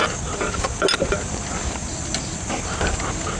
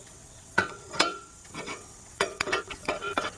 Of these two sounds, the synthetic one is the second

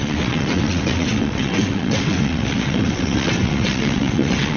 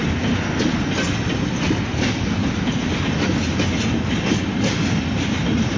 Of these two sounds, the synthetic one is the first